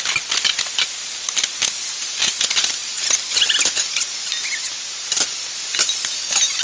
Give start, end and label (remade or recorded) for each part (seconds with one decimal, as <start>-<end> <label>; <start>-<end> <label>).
0.0-6.6 recorded